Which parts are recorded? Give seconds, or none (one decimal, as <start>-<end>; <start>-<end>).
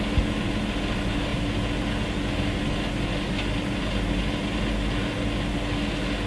0.0-6.3